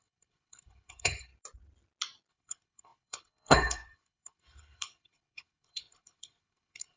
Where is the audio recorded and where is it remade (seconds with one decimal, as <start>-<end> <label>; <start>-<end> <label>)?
0.0-1.3 remade; 1.3-2.3 recorded; 2.3-7.0 remade